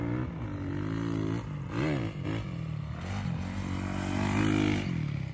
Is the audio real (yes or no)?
yes